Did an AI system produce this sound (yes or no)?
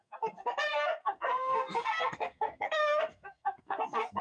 yes